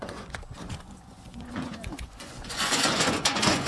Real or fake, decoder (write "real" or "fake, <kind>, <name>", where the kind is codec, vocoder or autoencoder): fake, vocoder, Vocos